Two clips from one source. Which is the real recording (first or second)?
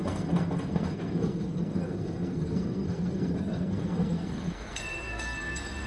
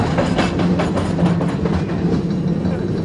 second